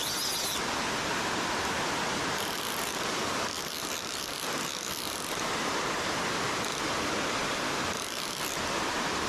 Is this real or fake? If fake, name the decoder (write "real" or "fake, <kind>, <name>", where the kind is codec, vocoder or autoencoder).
real